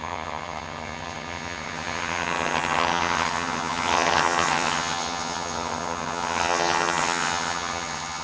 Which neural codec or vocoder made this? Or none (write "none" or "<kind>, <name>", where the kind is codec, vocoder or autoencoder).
vocoder, HiFi-GAN